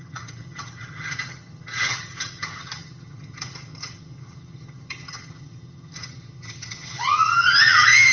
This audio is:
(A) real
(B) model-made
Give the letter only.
B